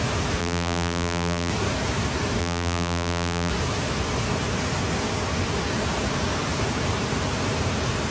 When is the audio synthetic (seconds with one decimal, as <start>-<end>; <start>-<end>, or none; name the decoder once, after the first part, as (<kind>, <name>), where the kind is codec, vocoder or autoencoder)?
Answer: 0.4-1.5 (vocoder, BigVGAN v2); 2.4-3.5